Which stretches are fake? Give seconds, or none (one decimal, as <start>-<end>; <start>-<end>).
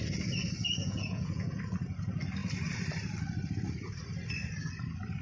0.8-1.6